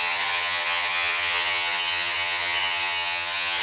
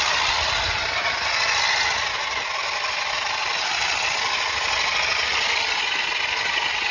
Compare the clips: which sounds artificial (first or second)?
first